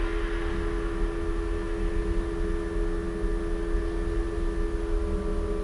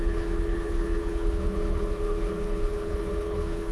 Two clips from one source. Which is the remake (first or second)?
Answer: second